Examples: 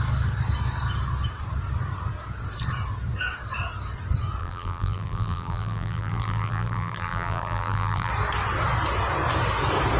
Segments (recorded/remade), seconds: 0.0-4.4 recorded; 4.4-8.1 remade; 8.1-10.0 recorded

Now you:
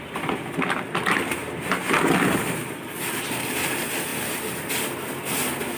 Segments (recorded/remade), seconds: 0.0-4.1 recorded; 4.1-4.7 remade; 4.7-5.8 recorded